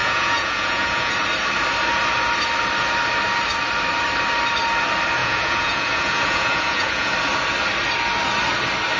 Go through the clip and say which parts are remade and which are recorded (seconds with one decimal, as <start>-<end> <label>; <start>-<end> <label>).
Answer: 0.0-1.1 remade; 1.1-5.2 recorded; 5.2-7.1 remade; 7.1-9.0 recorded